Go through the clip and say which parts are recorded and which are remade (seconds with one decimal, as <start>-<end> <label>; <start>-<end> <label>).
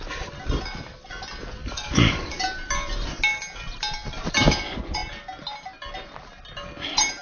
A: 0.0-1.6 recorded; 1.6-2.4 remade; 2.4-7.2 recorded